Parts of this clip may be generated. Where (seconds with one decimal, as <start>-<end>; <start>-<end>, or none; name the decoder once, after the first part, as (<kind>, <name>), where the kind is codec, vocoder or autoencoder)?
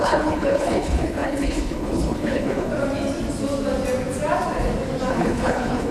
0.0-2.7 (codec, HILCodec); 5.1-5.9